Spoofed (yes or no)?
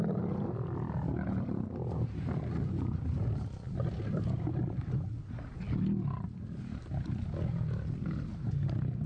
no